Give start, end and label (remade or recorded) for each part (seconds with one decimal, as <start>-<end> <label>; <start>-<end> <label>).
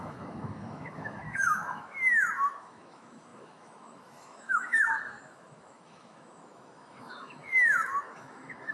0.0-8.7 remade